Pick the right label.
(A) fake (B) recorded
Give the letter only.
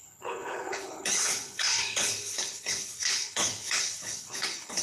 A